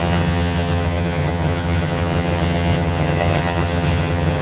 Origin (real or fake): fake